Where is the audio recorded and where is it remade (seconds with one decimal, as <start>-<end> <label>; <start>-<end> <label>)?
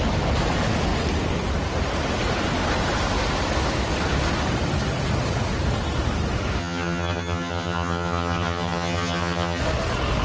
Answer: 0.0-6.6 recorded; 6.6-9.6 remade; 9.6-10.2 recorded